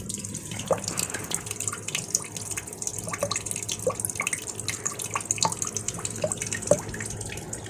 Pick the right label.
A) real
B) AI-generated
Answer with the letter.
A